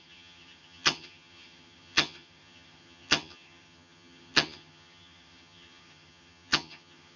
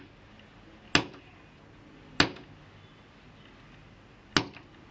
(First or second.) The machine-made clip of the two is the first